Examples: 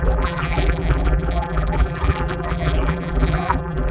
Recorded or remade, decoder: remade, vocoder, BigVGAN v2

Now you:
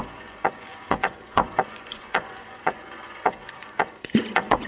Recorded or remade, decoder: remade, vocoder, Vocos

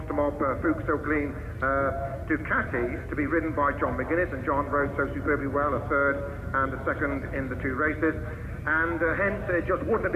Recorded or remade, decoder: recorded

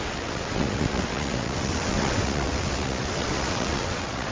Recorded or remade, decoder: remade, vocoder, WaveNeXt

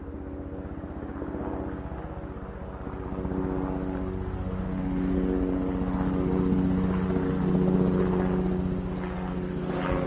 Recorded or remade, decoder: recorded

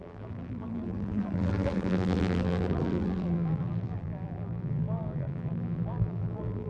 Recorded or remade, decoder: remade, vocoder, BigVGAN v2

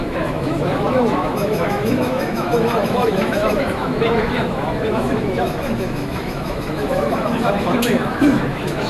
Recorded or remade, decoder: remade, autoencoder, DAC-VAE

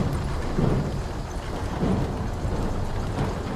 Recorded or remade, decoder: recorded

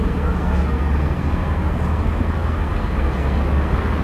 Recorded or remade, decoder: remade, codec, SNAC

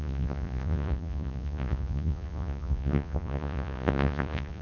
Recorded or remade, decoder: remade, vocoder, Vocos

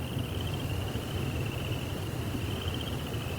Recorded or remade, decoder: recorded